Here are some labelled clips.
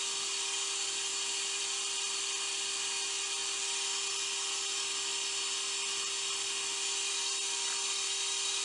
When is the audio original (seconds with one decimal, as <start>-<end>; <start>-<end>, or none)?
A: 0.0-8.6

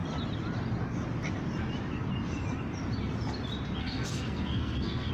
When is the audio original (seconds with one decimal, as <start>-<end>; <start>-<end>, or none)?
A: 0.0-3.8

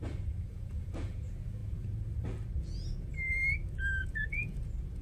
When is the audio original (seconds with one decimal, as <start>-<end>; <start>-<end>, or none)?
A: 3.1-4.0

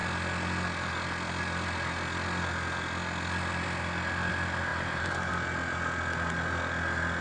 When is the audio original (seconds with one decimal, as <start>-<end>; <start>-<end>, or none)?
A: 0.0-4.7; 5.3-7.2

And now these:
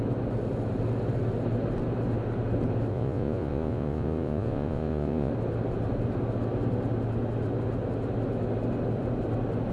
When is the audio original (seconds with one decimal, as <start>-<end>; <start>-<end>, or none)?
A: 0.0-2.9; 5.3-9.7